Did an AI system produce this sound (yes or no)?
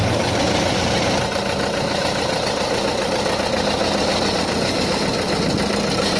no